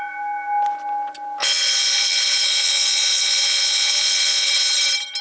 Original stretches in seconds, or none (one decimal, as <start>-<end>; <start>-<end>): 0.0-1.4; 4.5-5.2